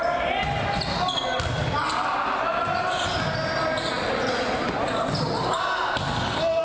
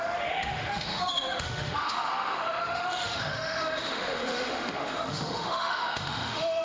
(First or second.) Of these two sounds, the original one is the first